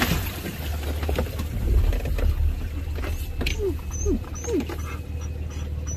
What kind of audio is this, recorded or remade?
recorded